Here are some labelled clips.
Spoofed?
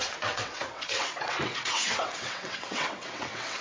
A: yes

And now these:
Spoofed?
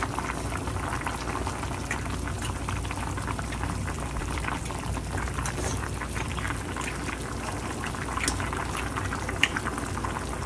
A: no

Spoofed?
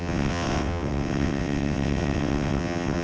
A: yes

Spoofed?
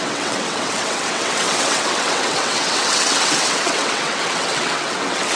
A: yes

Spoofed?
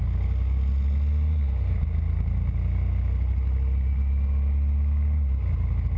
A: no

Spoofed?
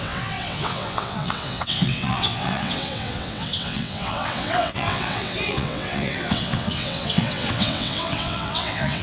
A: yes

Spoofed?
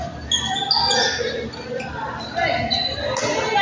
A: no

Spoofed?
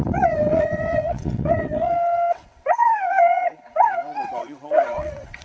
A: yes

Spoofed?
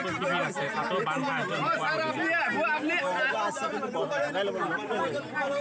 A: no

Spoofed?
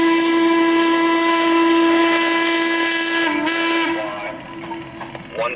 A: no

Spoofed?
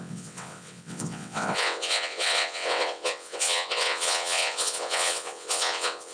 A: yes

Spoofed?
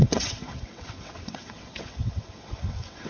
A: yes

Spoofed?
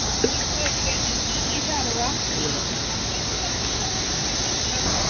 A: no